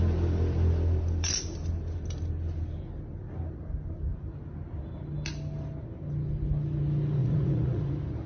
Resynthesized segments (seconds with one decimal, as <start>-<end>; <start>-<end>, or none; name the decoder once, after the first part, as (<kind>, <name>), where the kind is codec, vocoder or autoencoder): 7.2-7.9 (vocoder, Vocos)